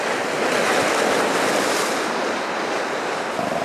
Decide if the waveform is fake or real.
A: real